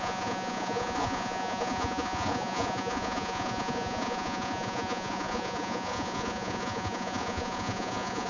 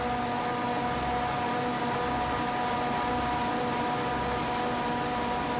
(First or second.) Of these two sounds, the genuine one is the second